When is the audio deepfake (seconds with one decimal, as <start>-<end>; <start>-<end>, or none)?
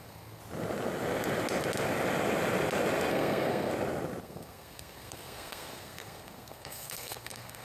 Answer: 0.0-0.4; 3.1-3.7; 4.2-7.6